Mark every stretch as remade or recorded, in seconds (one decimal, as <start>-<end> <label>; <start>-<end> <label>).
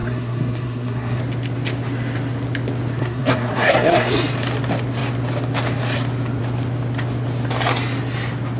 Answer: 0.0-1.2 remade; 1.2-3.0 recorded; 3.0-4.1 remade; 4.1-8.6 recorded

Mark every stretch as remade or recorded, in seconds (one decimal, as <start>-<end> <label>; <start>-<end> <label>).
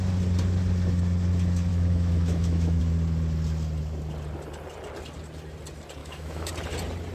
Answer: 0.0-1.7 recorded; 1.7-2.8 remade; 2.8-6.0 recorded; 6.0-6.5 remade; 6.5-7.1 recorded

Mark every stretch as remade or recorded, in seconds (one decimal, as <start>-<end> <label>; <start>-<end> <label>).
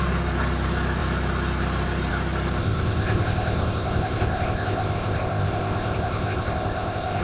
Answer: 0.0-2.6 recorded; 2.6-7.2 remade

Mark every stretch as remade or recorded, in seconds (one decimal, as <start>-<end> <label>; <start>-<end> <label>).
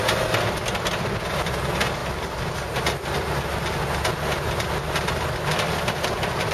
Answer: 0.0-6.5 recorded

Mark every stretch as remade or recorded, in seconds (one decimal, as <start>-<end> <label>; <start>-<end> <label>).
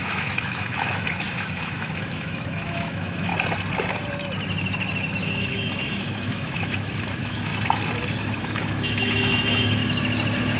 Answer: 0.0-3.3 remade; 3.3-5.1 recorded; 5.1-7.5 remade; 7.5-8.4 recorded; 8.4-9.8 remade; 9.8-10.6 recorded